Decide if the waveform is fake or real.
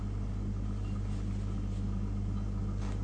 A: real